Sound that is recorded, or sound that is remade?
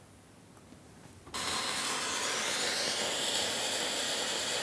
recorded